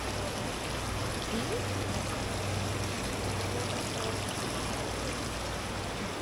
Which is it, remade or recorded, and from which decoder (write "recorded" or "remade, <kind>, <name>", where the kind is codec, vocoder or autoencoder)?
recorded